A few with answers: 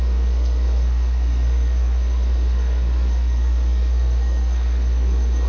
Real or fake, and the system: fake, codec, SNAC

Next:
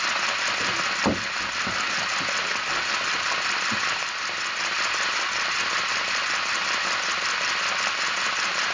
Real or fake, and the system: real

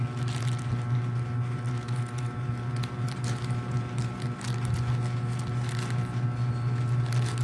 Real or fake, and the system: real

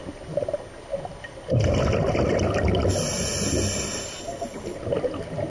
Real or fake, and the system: real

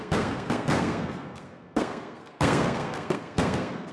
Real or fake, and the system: fake, codec, SNAC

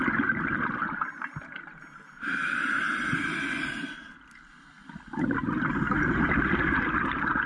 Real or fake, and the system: real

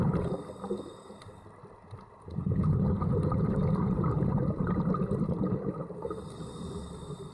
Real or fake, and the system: real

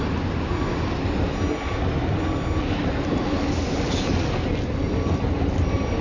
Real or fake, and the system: real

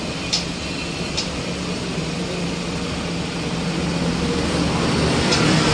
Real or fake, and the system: real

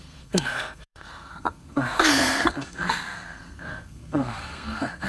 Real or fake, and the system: fake, codec, SNAC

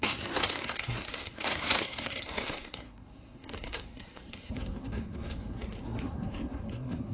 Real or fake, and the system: fake, codec, SNAC